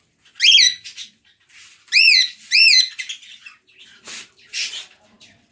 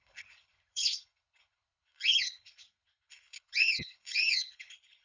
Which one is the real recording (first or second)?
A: first